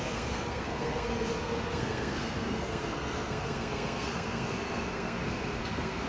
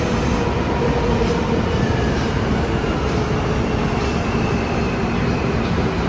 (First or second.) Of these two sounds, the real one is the second